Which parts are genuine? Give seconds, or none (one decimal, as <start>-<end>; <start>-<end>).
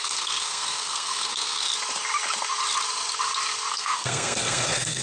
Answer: 1.7-3.7